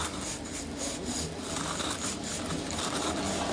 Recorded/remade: recorded